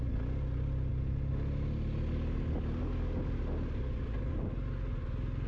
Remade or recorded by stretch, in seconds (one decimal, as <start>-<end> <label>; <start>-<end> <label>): 0.0-5.5 recorded